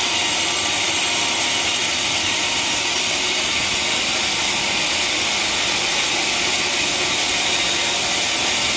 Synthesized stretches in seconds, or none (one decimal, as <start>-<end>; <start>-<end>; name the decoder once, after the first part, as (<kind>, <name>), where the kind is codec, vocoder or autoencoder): none